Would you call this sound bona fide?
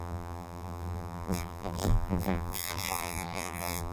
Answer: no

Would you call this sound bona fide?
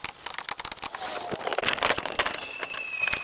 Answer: yes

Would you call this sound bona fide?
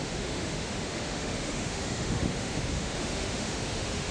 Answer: no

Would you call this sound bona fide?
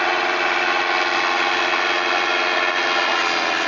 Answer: yes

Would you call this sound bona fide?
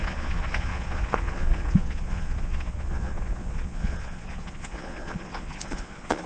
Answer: no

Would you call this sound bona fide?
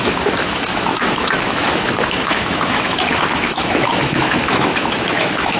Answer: no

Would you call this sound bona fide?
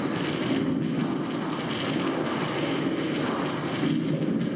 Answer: yes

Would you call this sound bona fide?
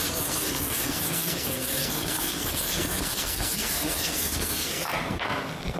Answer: no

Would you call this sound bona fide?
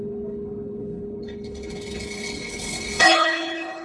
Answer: no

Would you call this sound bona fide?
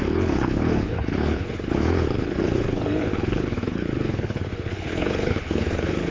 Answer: no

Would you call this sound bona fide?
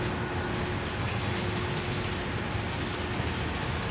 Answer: yes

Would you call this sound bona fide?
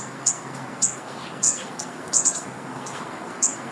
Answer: no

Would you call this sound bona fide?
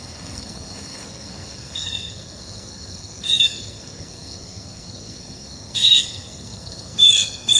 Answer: no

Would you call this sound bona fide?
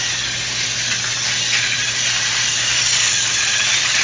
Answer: yes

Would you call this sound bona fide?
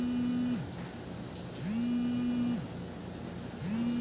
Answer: yes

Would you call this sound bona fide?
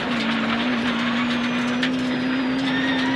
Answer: yes